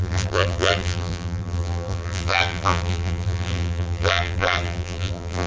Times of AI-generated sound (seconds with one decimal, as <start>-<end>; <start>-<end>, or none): 0.0-5.5